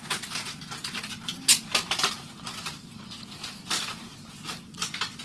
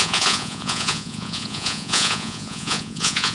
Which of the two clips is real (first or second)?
first